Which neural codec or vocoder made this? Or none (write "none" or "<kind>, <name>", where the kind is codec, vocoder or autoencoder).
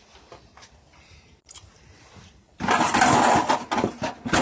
none